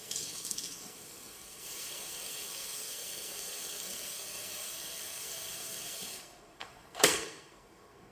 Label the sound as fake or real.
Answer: fake